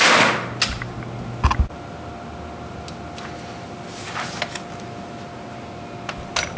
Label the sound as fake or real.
real